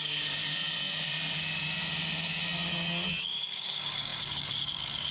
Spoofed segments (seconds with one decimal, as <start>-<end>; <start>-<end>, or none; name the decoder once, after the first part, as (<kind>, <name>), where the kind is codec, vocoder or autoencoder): 0.0-0.4 (codec, DAC); 3.2-5.1